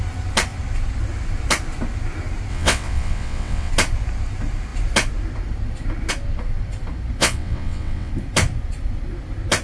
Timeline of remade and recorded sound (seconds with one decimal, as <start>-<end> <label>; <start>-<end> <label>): 0.0-2.5 recorded; 2.5-3.7 remade; 3.7-7.2 recorded; 7.2-8.1 remade; 8.1-9.6 recorded